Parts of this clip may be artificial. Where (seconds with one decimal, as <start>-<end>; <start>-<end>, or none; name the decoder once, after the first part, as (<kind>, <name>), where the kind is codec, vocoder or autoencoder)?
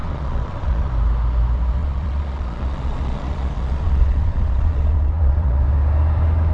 0.0-0.9 (vocoder, Vocos); 1.8-5.6